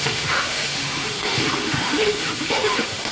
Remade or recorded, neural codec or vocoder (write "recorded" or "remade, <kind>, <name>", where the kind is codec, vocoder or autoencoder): remade, autoencoder, DAC-VAE